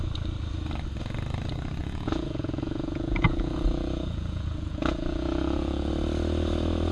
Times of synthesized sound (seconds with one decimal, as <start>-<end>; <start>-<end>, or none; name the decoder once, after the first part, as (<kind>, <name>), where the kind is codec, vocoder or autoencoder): 1.8-5.9 (vocoder, Vocos)